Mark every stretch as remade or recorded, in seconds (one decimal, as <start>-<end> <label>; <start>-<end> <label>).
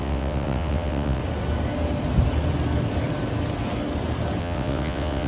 0.0-1.2 remade; 1.2-4.4 recorded; 4.4-5.3 remade